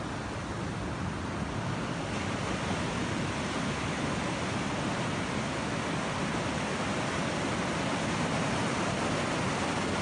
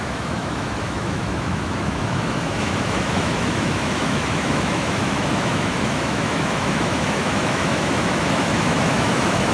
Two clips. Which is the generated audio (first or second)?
second